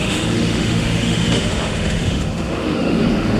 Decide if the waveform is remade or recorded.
remade